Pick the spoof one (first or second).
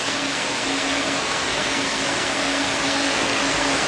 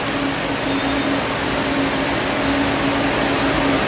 first